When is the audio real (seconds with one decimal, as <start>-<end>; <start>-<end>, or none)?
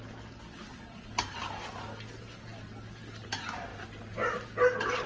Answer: 0.0-5.1